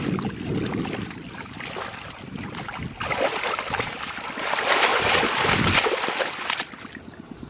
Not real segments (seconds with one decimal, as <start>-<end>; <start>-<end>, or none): none